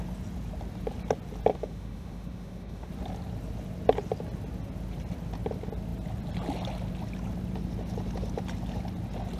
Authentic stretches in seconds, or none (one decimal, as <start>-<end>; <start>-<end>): 0.0-1.5; 2.9-9.4

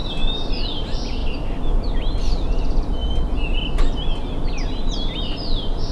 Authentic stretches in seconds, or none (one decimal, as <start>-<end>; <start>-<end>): 0.0-5.9

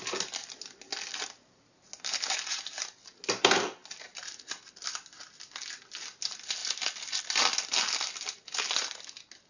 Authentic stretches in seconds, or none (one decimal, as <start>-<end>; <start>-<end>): 0.0-9.5